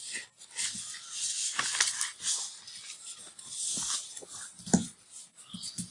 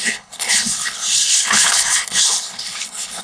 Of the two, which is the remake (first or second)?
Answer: second